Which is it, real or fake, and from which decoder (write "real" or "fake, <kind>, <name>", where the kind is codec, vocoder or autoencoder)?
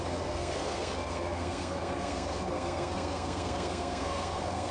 fake, codec, SNAC